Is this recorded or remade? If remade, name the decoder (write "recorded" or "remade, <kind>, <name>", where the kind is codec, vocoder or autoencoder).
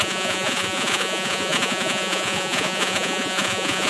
remade, vocoder, Vocos